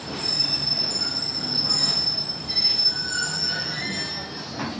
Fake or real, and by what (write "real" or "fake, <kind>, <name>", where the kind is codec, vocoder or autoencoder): real